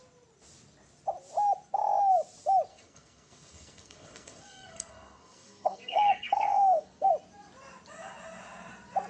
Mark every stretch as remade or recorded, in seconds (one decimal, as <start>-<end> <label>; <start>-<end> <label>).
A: 0.0-2.7 recorded; 2.7-7.1 remade; 7.1-9.1 recorded